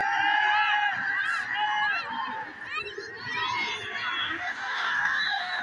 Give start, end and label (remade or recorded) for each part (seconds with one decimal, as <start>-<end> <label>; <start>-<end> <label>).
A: 0.0-4.2 recorded; 4.2-5.6 remade